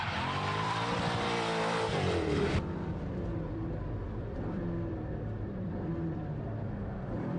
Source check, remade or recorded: remade